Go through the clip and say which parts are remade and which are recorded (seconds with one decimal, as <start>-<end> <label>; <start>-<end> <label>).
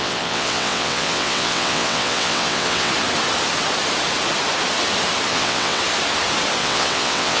0.0-2.9 remade; 2.9-5.3 recorded; 5.3-5.8 remade; 5.8-6.6 recorded; 6.6-7.4 remade